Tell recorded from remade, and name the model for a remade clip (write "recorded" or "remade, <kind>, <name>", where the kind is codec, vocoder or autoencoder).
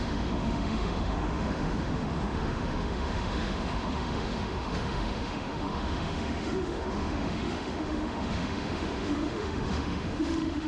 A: remade, autoencoder, DAC-VAE